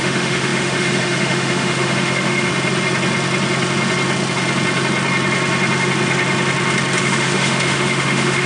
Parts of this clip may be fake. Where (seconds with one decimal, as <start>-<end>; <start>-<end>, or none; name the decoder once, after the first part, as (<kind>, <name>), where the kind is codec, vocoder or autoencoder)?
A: 0.0-2.5 (autoencoder, DAC-VAE); 7.0-8.5